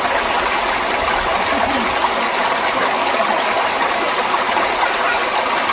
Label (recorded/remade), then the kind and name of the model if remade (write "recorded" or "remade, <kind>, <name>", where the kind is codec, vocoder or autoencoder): recorded